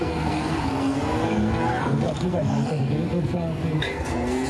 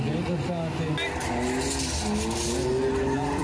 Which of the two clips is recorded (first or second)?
second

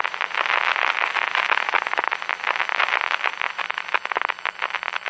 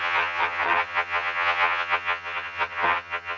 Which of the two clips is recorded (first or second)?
first